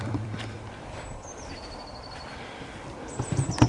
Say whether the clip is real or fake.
fake